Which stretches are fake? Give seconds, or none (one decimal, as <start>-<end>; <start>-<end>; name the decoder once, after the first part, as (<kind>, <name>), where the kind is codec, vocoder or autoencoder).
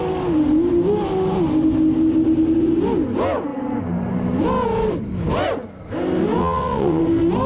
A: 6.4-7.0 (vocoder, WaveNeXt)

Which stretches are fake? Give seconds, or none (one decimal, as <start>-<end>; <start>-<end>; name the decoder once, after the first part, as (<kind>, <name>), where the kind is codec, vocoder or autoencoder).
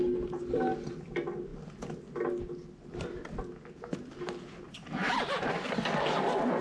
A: none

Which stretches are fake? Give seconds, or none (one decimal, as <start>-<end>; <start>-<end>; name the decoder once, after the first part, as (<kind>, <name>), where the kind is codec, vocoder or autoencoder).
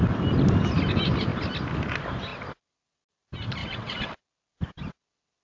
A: 3.6-4.2 (vocoder, WaveNeXt)